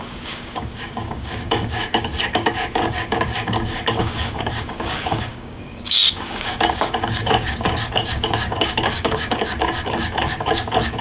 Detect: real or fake fake